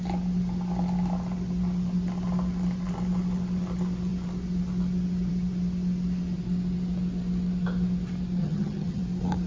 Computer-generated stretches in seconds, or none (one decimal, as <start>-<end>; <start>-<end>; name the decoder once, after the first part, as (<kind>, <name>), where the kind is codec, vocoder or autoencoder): 8.4-9.0 (vocoder, HiFi-GAN)